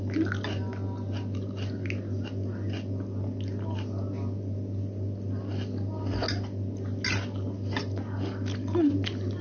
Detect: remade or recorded recorded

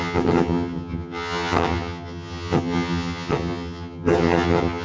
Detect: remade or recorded remade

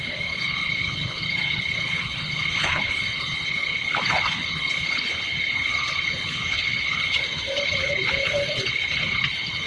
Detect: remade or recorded remade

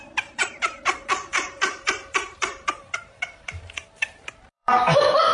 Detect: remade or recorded remade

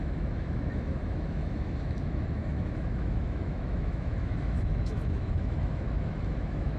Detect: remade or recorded remade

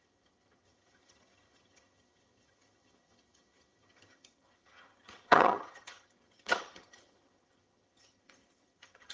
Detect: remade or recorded remade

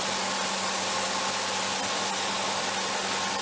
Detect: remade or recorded recorded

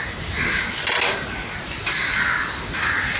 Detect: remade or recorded recorded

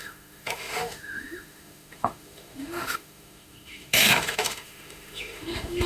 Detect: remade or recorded remade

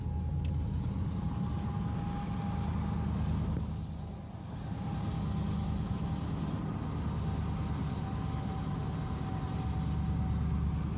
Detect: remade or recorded recorded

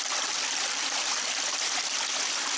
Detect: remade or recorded remade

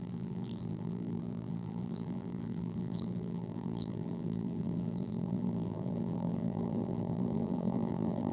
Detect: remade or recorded remade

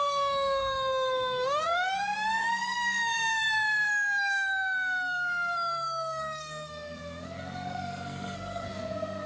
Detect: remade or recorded remade